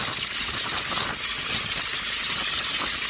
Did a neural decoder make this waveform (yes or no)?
no